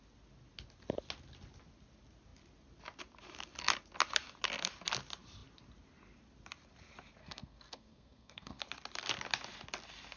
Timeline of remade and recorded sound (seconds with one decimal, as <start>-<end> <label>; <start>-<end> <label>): 0.0-7.2 recorded; 7.2-8.6 remade; 8.6-10.2 recorded

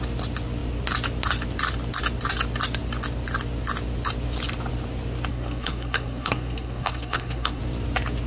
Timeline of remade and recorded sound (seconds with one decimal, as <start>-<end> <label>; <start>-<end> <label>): 0.0-5.3 recorded; 5.3-7.6 remade; 7.6-8.3 recorded

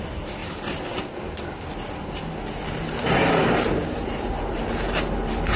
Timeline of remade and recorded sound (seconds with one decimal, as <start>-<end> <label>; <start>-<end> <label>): 0.0-0.4 recorded; 0.4-1.4 remade; 1.4-3.4 recorded; 3.4-5.0 remade; 5.0-5.6 recorded

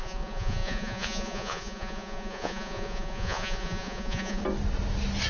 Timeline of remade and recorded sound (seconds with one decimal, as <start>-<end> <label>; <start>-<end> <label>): 0.0-4.4 remade; 4.4-5.3 recorded

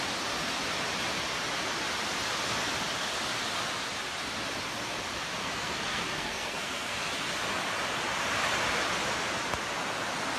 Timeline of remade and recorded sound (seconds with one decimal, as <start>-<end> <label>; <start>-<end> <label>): 0.0-5.4 recorded; 5.4-7.1 remade; 7.1-10.4 recorded

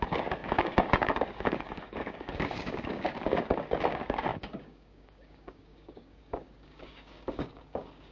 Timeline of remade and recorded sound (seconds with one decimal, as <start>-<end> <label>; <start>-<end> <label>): 0.0-8.1 remade

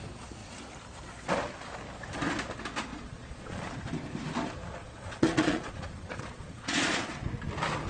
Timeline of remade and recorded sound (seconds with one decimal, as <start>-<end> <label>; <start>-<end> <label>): 0.0-2.9 recorded; 2.9-3.7 remade; 3.7-4.8 recorded; 4.8-7.2 remade; 7.2-7.9 recorded